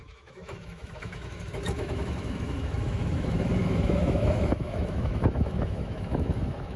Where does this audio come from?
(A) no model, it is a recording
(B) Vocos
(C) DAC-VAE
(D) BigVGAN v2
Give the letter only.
C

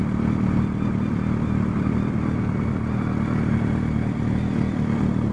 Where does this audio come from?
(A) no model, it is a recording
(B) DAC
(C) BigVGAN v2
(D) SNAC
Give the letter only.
C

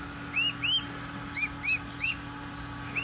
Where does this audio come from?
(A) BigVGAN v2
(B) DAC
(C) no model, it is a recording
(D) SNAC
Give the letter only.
C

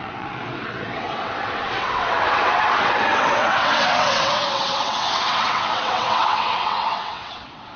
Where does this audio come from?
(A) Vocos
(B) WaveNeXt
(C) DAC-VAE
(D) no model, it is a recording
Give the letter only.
B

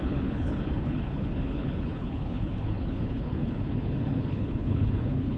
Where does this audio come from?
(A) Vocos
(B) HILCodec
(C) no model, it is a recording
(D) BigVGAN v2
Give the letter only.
B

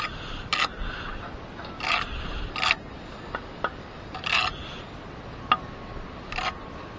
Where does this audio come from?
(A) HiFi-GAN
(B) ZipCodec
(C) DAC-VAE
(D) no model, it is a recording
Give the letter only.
D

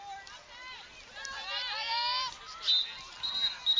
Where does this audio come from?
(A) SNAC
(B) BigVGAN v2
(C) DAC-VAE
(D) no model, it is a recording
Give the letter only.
D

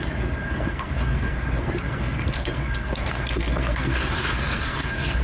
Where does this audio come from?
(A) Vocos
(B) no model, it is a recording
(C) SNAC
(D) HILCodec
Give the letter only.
C